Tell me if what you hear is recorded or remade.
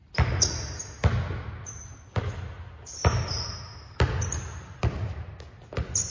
recorded